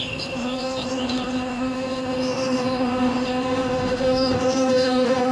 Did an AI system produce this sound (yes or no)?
yes